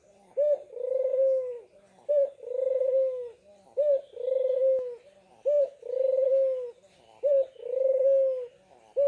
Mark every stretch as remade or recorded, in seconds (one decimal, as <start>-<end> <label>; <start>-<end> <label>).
0.0-9.1 recorded